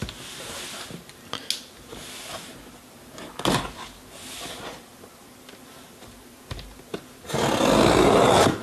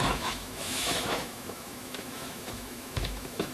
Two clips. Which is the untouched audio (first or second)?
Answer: first